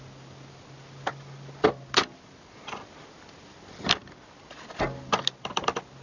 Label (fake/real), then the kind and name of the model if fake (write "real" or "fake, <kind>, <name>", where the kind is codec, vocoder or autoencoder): real